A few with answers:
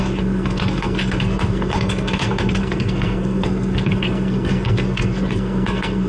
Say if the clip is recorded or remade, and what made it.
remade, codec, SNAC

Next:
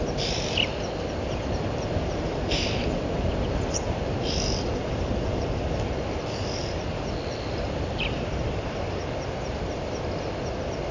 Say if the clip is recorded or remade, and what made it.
recorded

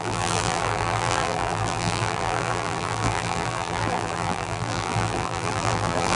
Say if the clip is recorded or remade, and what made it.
remade, vocoder, BigVGAN v2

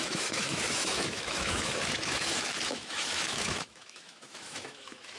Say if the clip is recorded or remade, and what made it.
remade, autoencoder, DAC-VAE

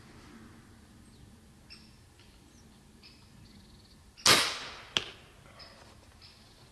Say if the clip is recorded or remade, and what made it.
recorded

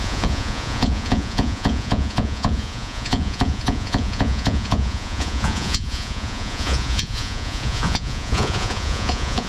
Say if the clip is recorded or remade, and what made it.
remade, vocoder, Vocos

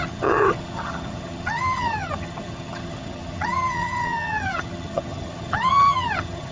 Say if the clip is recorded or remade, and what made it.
remade, vocoder, HiFi-GAN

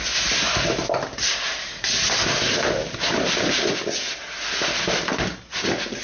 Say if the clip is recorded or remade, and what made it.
recorded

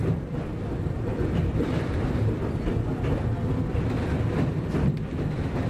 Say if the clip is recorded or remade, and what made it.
recorded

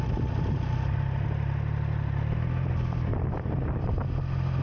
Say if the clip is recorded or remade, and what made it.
recorded